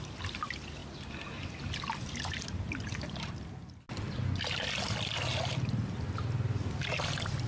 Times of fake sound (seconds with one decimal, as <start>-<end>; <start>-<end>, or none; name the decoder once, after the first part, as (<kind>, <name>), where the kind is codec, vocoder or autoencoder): none